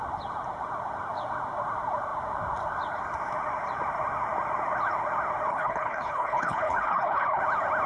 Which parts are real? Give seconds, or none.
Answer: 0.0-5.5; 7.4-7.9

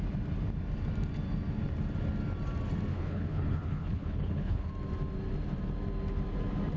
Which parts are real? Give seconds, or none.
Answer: 0.0-2.9; 4.7-6.8

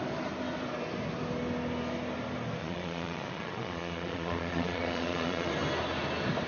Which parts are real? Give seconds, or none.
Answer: 0.0-2.6; 5.5-6.5

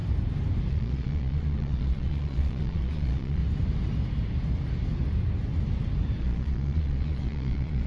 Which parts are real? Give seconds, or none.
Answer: 0.0-0.7; 3.4-6.2

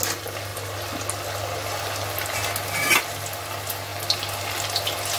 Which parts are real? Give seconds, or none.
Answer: 0.0-5.2

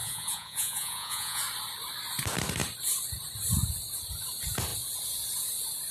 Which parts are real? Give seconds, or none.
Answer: 1.4-5.9

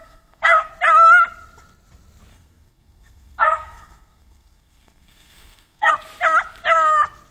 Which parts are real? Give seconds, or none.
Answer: 0.7-2.3; 5.9-7.3

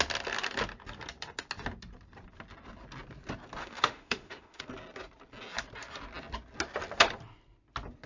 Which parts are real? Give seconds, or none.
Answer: 0.0-3.6; 4.6-8.1